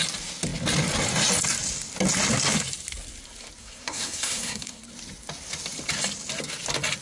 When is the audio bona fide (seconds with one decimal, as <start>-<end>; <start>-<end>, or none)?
0.0-3.6; 4.8-7.0